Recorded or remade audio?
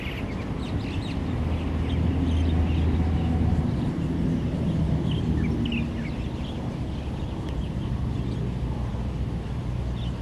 recorded